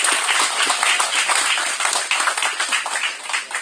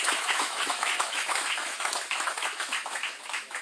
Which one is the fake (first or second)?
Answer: second